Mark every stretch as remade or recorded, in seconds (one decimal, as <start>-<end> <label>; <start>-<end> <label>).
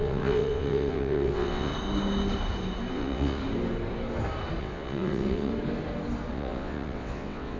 0.0-1.7 remade; 1.7-2.9 recorded; 2.9-3.4 remade; 3.4-4.6 recorded; 4.6-5.5 remade; 5.5-6.3 recorded; 6.3-7.6 remade